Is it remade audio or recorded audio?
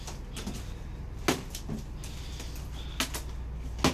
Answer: recorded